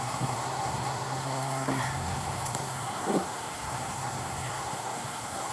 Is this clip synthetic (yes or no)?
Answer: yes